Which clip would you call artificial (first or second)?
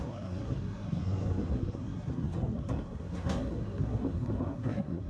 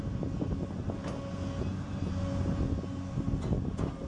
first